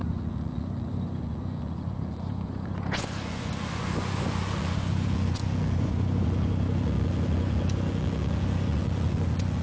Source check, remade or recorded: remade